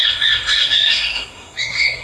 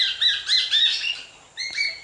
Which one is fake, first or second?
first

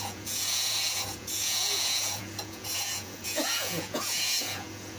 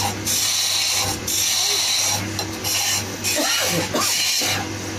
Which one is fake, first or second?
first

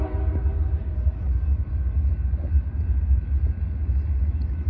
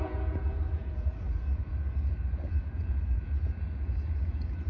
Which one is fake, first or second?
second